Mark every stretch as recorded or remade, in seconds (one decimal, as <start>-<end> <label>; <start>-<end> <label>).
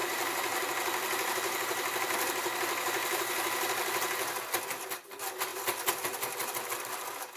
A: 0.0-4.3 remade; 4.3-5.5 recorded; 5.5-6.0 remade; 6.0-6.4 recorded; 6.4-7.0 remade; 7.0-7.4 recorded